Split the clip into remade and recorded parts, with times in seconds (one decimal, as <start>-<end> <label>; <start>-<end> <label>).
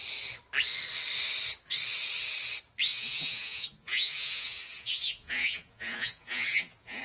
0.0-2.9 recorded; 2.9-7.0 remade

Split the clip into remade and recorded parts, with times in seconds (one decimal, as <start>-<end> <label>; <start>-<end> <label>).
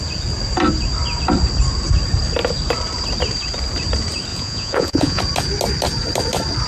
0.0-4.3 recorded; 4.3-5.2 remade; 5.2-6.7 recorded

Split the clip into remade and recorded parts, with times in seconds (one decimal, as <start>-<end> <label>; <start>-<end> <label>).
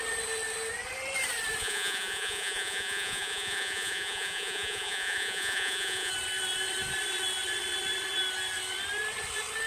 0.0-1.6 recorded; 1.6-6.1 remade; 6.1-9.7 recorded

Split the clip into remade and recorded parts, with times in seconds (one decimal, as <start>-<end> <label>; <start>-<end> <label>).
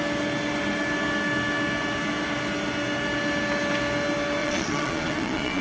0.0-4.4 recorded; 4.4-5.6 remade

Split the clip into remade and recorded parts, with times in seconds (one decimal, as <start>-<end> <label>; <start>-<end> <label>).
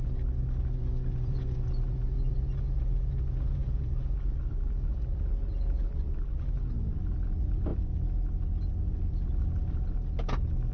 0.0-0.8 recorded; 0.8-4.4 remade; 4.4-10.7 recorded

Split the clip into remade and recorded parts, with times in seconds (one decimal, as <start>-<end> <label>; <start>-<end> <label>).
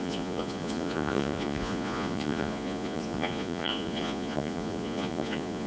0.0-5.7 remade